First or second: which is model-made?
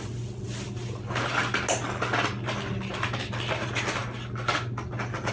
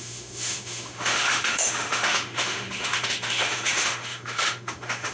second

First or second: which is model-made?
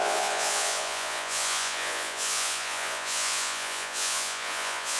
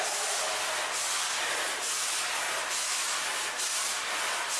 first